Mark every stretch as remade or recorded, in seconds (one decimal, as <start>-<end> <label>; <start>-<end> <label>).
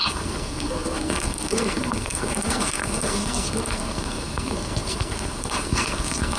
0.0-6.4 remade